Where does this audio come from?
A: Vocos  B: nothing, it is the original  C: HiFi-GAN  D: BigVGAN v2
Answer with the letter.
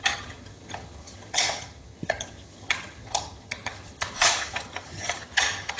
C